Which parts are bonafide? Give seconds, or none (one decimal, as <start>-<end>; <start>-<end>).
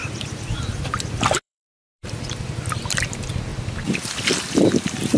3.1-3.5